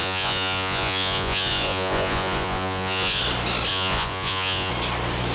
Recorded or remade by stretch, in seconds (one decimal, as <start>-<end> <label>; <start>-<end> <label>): 0.0-3.2 remade; 3.2-3.7 recorded; 3.7-4.7 remade; 4.7-5.3 recorded